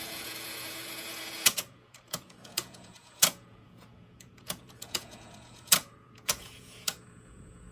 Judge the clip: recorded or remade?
remade